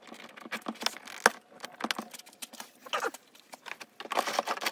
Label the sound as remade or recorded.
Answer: recorded